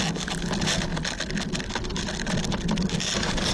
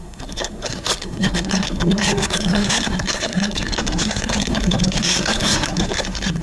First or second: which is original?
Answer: first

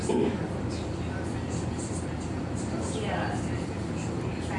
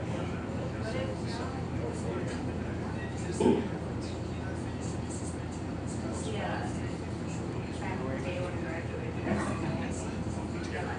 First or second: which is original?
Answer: second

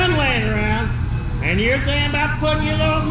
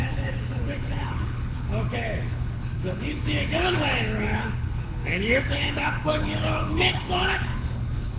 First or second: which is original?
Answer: first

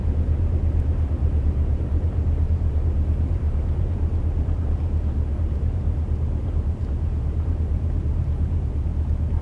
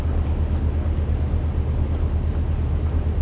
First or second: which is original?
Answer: second